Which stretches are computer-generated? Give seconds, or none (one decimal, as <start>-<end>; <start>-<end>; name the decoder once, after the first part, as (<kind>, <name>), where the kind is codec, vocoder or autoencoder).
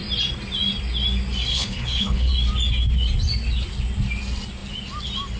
1.5-2.3 (codec, HILCodec)